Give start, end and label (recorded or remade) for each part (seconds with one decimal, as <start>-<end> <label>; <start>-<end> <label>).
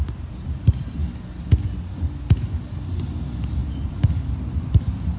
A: 0.0-1.0 remade; 1.0-3.1 recorded; 3.1-5.2 remade